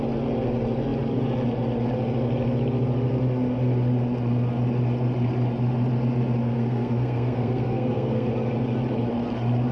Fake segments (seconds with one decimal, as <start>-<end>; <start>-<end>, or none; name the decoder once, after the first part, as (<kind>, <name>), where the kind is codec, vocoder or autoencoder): 6.4-8.3 (codec, SNAC)